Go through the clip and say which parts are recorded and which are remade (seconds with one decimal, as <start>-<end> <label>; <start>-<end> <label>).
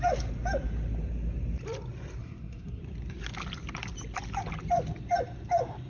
0.0-2.2 recorded; 2.2-2.8 remade; 2.8-5.9 recorded